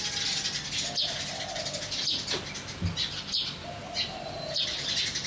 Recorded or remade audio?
recorded